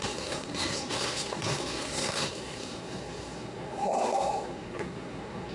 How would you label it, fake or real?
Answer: fake